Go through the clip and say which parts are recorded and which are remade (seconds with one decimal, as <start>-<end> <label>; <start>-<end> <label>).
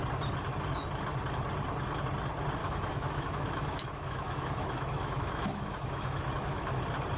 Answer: 0.0-2.6 recorded; 2.6-6.8 remade; 6.8-7.2 recorded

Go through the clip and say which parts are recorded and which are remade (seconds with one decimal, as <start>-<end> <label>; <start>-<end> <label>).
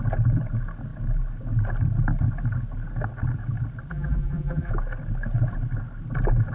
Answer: 0.0-3.9 recorded; 3.9-4.7 remade; 4.7-6.5 recorded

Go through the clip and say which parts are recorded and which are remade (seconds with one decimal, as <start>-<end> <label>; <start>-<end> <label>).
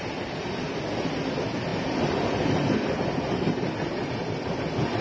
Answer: 0.0-5.0 recorded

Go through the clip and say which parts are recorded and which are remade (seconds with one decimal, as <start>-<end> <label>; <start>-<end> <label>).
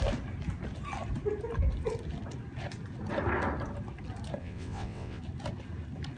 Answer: 0.0-4.4 recorded; 4.4-5.2 remade; 5.2-6.2 recorded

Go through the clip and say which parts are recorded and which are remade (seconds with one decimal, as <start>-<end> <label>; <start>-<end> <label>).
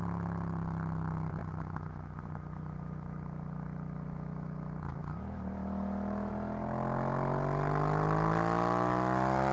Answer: 0.0-1.4 recorded; 1.4-6.3 remade; 6.3-9.5 recorded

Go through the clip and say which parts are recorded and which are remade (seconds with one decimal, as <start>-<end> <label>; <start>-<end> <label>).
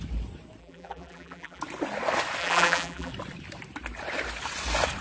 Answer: 0.0-0.6 recorded; 0.6-1.6 remade; 1.6-2.4 recorded; 2.4-3.1 remade; 3.1-5.0 recorded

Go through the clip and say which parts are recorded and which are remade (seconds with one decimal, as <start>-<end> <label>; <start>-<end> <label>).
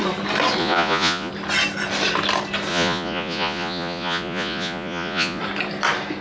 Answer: 0.0-0.6 recorded; 0.6-1.3 remade; 1.3-2.7 recorded; 2.7-5.4 remade; 5.4-6.2 recorded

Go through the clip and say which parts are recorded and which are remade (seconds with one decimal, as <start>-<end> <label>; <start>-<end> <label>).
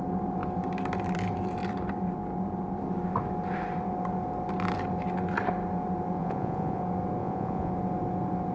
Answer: 0.0-6.2 recorded; 6.2-6.8 remade; 6.8-7.2 recorded; 7.2-7.7 remade; 7.7-8.5 recorded